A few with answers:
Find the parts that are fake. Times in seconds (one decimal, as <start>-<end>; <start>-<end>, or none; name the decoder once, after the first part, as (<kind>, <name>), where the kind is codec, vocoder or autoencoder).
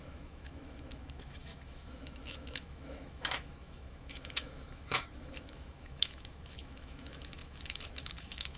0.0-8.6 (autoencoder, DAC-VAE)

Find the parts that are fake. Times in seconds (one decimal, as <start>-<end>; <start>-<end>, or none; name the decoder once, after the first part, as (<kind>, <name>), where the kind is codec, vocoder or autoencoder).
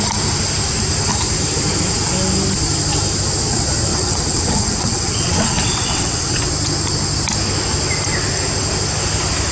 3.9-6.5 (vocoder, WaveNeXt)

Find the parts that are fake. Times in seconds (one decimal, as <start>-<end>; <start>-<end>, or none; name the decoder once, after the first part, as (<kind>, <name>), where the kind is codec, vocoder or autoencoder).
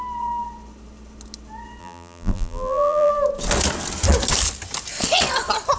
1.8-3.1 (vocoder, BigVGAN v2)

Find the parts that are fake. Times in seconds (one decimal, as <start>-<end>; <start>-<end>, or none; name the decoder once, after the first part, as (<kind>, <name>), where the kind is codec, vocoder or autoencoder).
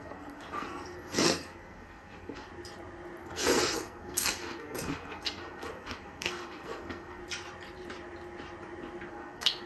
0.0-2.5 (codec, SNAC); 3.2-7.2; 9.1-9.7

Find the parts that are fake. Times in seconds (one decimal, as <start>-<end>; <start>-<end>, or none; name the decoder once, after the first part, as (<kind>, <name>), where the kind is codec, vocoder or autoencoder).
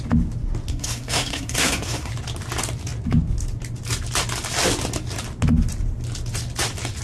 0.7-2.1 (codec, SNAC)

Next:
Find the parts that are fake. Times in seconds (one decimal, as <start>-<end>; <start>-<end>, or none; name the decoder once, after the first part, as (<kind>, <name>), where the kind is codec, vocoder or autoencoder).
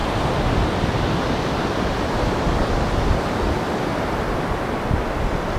none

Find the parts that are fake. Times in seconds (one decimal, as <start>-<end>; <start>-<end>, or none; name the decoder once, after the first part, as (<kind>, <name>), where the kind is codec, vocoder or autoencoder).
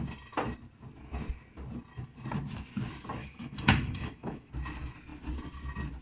3.2-4.5 (autoencoder, DAC-VAE)